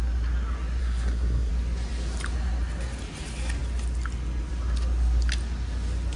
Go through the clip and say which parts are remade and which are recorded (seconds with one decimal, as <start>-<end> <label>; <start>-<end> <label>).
0.0-0.8 recorded; 0.8-1.5 remade; 1.5-6.2 recorded